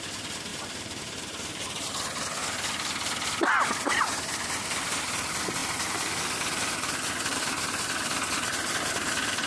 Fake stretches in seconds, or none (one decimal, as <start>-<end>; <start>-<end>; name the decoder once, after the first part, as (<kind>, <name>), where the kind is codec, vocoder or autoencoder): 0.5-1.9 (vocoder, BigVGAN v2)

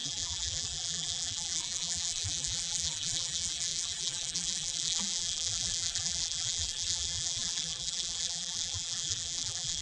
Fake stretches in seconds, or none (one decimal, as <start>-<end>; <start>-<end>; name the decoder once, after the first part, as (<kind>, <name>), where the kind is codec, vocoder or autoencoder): 0.0-9.8 (vocoder, BigVGAN v2)

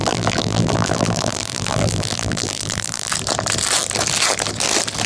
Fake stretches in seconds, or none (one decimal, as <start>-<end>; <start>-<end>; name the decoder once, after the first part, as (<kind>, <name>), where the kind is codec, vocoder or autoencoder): 0.0-3.1 (vocoder, BigVGAN v2)

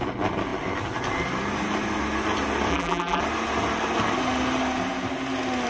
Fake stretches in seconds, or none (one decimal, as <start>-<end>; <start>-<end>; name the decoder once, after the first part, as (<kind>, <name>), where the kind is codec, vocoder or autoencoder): 2.7-3.2 (vocoder, BigVGAN v2)